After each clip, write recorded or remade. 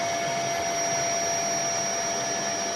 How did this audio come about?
recorded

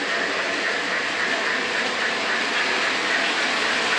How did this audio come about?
recorded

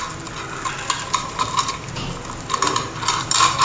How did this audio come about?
recorded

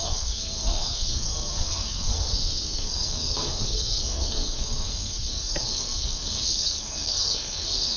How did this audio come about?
remade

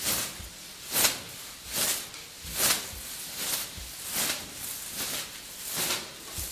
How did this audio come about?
recorded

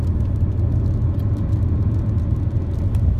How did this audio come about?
recorded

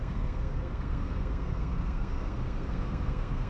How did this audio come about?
remade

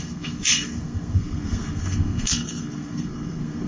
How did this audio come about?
remade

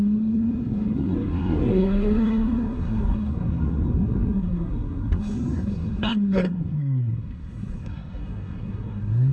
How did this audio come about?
remade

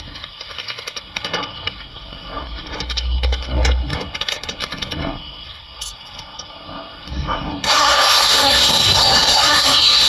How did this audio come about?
remade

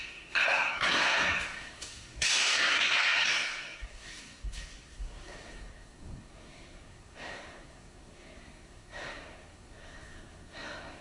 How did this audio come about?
remade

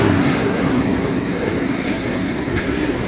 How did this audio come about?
remade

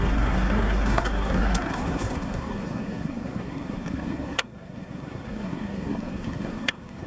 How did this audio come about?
remade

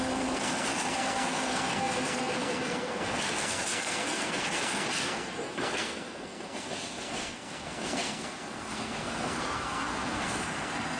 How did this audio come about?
remade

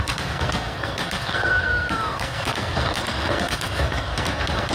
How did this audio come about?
remade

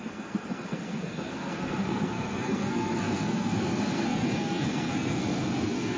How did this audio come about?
remade